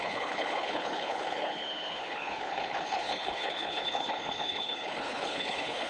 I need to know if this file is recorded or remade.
remade